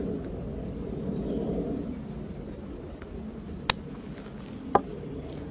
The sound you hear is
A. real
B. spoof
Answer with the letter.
A